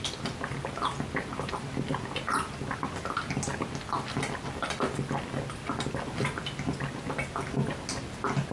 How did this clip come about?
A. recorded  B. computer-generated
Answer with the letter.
A